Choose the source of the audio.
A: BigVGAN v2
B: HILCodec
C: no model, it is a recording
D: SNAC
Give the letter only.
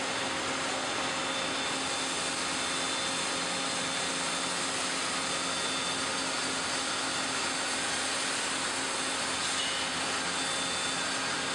C